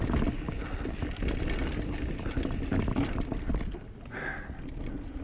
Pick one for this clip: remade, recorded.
recorded